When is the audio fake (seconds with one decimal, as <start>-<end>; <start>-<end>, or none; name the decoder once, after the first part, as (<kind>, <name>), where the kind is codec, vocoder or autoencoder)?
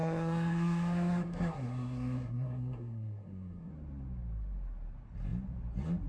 0.0-3.7 (codec, SNAC)